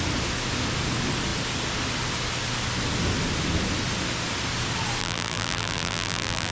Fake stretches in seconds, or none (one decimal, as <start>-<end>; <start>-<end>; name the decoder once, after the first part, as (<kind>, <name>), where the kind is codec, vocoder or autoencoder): 5.0-6.5 (vocoder, BigVGAN v2)